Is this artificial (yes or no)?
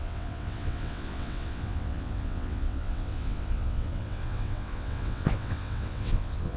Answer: yes